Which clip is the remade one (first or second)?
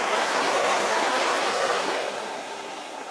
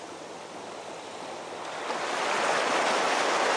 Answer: first